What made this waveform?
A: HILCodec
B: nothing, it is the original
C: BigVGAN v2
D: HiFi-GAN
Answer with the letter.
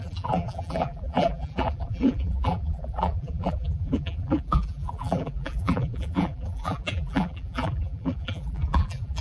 C